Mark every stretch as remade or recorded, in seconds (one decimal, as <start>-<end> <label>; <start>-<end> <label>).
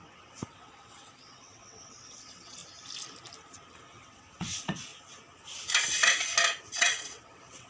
0.0-2.6 remade; 2.6-3.8 recorded; 3.8-4.9 remade; 4.9-6.6 recorded; 6.6-7.7 remade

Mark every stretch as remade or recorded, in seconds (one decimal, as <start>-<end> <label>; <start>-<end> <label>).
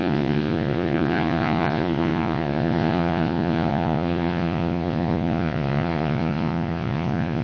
0.0-7.4 remade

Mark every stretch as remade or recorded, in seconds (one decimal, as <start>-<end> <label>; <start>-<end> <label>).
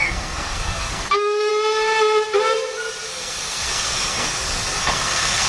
0.0-1.5 remade; 1.5-3.1 recorded; 3.1-5.5 remade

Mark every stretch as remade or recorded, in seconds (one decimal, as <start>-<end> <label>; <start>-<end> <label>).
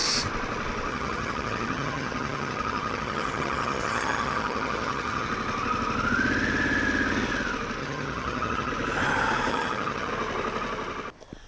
0.0-0.9 recorded; 0.9-5.3 remade; 5.3-7.8 recorded; 7.8-8.7 remade; 8.7-9.5 recorded; 9.5-10.1 remade; 10.1-11.5 recorded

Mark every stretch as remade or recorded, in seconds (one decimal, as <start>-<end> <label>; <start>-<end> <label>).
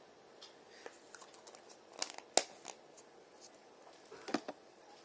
0.0-5.0 recorded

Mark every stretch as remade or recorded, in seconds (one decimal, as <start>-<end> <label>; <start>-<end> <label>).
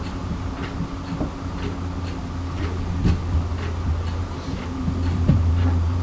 0.0-0.6 remade; 0.6-4.2 recorded; 4.2-6.0 remade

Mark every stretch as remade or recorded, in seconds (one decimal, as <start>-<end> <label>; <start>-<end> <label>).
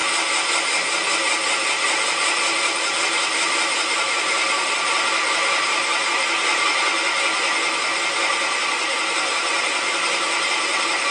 0.0-11.1 recorded